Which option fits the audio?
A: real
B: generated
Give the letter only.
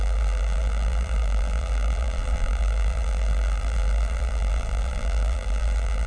B